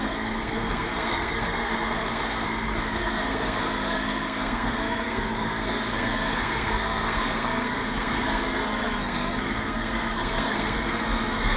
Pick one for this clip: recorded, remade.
remade